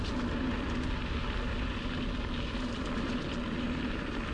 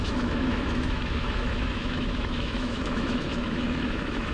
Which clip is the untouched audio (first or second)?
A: first